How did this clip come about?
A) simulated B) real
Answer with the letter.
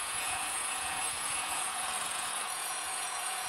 A